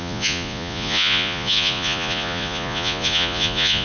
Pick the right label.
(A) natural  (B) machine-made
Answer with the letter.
B